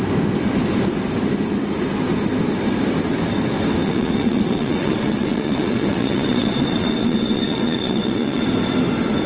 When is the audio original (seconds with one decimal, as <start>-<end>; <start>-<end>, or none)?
0.0-3.8; 8.4-9.3